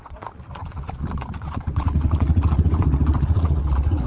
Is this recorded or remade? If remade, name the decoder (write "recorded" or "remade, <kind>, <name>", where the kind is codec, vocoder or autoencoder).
remade, vocoder, Vocos